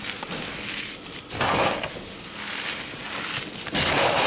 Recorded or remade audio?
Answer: recorded